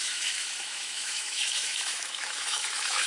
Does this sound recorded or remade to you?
remade